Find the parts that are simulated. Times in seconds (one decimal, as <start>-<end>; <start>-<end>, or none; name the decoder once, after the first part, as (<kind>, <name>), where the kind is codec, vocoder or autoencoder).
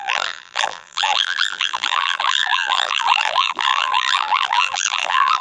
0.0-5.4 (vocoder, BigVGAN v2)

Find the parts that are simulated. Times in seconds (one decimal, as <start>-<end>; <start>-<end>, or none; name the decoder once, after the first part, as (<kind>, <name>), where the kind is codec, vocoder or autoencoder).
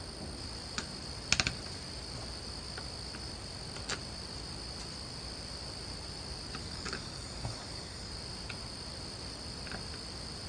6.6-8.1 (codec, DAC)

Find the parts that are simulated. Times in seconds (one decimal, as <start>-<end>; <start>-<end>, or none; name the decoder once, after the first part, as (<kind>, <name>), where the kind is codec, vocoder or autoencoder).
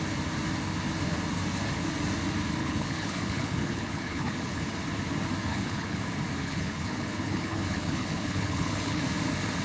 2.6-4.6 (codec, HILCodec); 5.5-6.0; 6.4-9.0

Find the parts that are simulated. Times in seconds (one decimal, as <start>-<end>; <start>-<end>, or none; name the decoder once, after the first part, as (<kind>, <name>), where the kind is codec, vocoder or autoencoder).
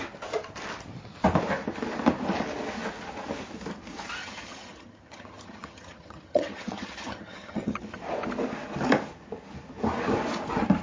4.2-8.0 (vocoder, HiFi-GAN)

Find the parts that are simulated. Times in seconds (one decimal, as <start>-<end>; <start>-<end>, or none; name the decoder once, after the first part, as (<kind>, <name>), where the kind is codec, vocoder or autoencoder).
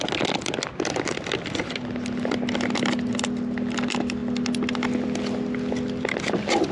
none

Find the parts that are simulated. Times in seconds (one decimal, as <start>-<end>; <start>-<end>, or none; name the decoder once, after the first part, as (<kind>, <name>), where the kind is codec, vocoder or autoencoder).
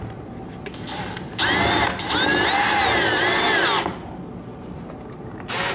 none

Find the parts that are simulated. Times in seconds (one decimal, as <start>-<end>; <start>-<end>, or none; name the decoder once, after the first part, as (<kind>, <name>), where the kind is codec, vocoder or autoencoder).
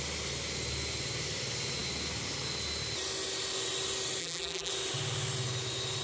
4.2-4.7 (vocoder, BigVGAN v2)